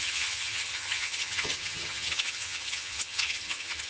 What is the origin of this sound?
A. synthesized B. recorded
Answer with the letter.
A